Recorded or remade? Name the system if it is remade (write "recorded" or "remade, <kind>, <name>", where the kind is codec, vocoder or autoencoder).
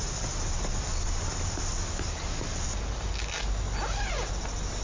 recorded